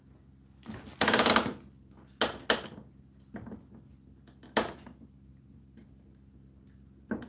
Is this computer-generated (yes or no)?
no